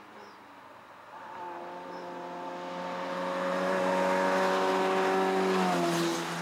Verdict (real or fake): real